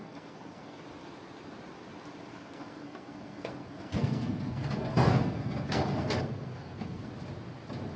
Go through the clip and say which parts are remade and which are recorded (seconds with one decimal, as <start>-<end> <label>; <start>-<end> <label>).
0.0-0.8 remade; 0.8-2.3 recorded; 2.3-7.1 remade; 7.1-8.0 recorded